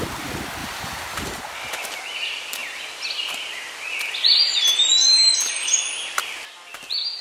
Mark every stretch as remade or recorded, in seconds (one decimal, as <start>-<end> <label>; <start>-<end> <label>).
0.0-0.6 recorded; 0.6-1.4 remade; 1.4-7.2 recorded

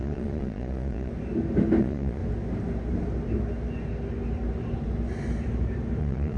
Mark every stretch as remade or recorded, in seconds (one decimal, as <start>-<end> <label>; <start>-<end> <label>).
0.0-1.1 remade; 1.1-1.8 recorded; 1.8-2.2 remade; 2.2-6.0 recorded; 6.0-6.4 remade